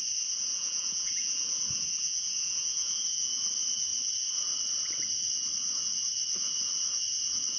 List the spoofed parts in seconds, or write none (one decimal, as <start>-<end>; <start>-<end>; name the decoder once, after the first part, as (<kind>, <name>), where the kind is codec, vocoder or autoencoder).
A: 0.5-3.5 (vocoder, Vocos)